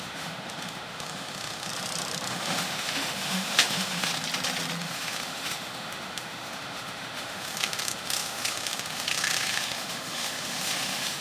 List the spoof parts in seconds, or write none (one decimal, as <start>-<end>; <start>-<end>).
0.0-1.7; 2.3-4.1; 4.8-11.2